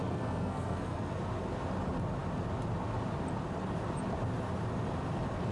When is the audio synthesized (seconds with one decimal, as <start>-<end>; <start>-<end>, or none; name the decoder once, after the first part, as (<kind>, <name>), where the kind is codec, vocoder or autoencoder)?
0.0-1.1 (codec, SNAC)

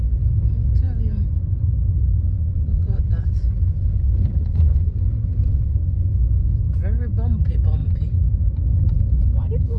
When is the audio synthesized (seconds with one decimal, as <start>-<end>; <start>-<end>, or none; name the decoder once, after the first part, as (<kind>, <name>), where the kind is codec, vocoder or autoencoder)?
2.4-3.1 (vocoder, Vocos); 4.4-5.1

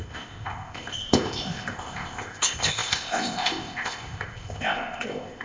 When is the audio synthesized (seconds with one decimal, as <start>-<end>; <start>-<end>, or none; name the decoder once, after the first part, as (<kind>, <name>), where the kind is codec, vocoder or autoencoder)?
0.0-5.4 (codec, ZipCodec)